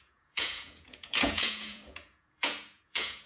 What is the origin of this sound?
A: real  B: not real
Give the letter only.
B